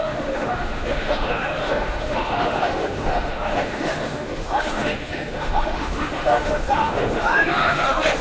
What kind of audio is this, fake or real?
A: fake